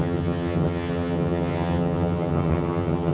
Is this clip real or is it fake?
fake